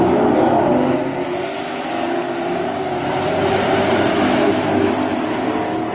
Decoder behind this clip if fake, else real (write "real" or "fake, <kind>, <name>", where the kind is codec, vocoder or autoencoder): real